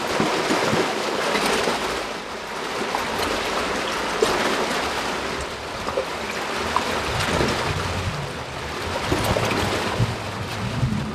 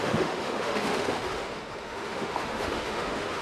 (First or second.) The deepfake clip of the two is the second